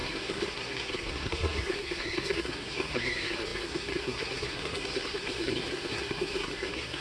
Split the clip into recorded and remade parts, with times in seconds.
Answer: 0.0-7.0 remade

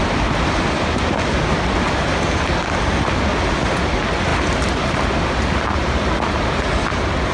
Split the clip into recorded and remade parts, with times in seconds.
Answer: 0.0-7.3 recorded

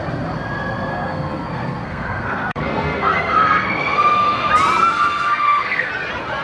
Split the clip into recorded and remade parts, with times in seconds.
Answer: 0.0-0.9 recorded; 0.9-4.5 remade; 4.5-4.9 recorded; 4.9-5.9 remade; 5.9-6.4 recorded

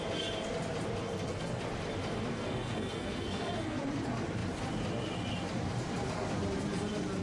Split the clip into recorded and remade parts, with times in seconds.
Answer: 0.0-1.0 recorded; 1.0-1.6 remade; 1.6-2.3 recorded; 2.3-3.8 remade; 3.8-7.2 recorded

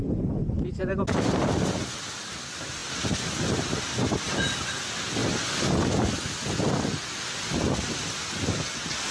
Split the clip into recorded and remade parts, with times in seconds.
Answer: 0.0-9.1 recorded

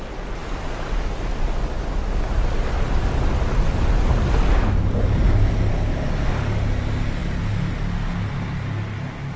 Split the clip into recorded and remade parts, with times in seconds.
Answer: 0.0-9.4 recorded